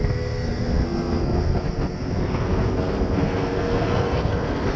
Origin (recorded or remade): remade